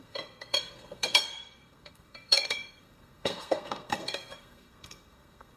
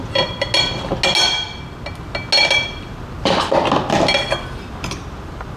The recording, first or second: second